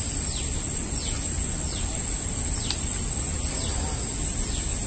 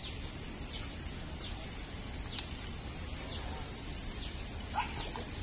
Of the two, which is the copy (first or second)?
second